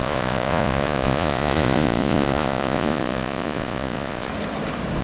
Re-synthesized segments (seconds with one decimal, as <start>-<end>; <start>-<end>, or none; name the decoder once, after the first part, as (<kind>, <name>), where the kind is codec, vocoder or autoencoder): 0.0-4.3 (vocoder, Vocos)